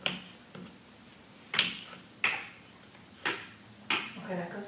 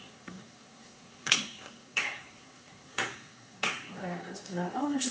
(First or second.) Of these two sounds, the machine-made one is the second